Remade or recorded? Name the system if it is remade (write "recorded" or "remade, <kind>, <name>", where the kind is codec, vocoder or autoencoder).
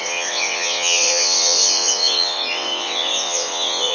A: remade, vocoder, WaveNeXt